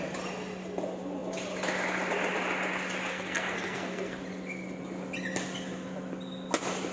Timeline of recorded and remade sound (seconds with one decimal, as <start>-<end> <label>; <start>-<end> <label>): 0.0-3.1 recorded; 3.1-4.2 remade; 4.2-6.9 recorded